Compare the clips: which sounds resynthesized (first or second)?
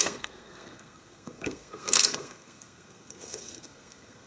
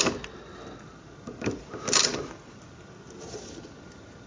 first